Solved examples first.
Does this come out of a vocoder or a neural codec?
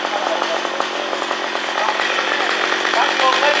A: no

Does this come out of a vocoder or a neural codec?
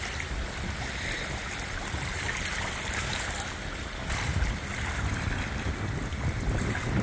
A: no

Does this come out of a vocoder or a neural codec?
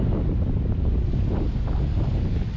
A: no